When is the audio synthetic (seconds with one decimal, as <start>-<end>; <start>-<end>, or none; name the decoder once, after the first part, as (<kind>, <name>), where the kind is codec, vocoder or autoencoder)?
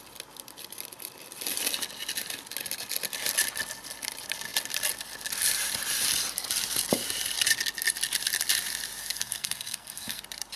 9.0-10.2 (codec, SNAC)